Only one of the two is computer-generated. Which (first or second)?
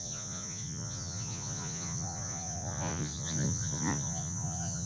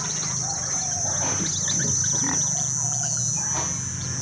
first